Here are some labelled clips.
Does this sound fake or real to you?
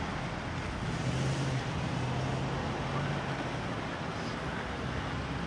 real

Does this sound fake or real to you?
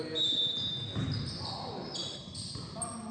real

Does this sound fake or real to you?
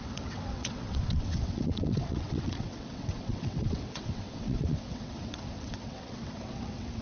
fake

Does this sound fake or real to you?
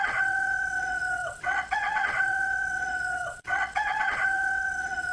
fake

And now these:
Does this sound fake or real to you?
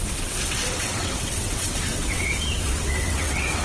fake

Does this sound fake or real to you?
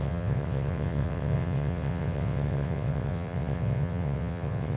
fake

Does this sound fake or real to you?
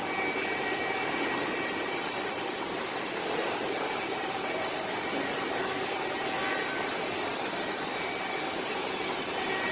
real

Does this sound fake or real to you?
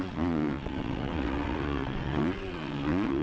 fake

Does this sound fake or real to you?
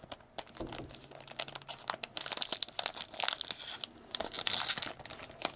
real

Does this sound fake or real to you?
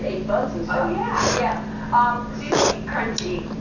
real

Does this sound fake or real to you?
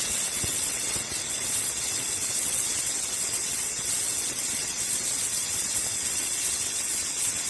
fake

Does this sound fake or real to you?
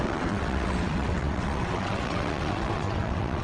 fake